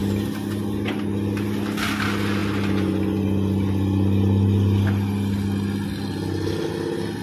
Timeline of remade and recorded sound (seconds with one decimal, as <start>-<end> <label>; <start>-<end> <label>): 0.0-7.2 recorded